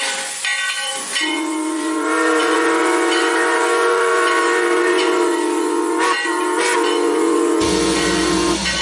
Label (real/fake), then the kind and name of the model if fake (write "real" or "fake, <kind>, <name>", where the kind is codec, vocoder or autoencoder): fake, vocoder, Vocos